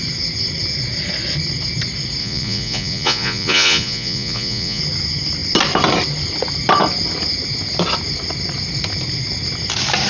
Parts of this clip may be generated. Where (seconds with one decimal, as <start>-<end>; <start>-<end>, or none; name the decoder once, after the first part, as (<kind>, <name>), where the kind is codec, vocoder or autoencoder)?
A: 2.2-4.8 (vocoder, Vocos)